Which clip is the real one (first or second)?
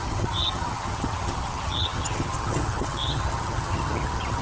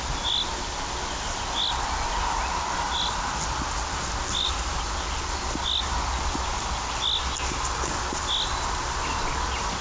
second